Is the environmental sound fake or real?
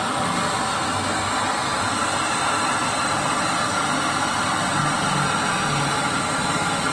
real